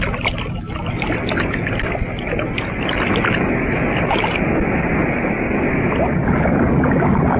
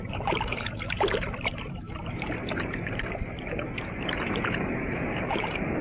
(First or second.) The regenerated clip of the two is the second